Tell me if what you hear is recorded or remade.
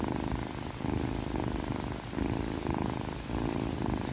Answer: recorded